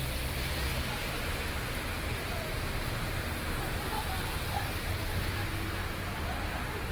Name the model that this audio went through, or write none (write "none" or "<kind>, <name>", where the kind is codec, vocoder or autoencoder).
none